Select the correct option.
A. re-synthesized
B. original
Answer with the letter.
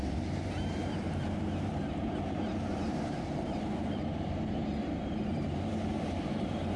A